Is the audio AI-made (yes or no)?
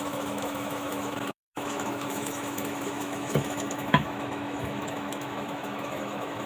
yes